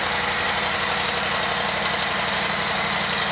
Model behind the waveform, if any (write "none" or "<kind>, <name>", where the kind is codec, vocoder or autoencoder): none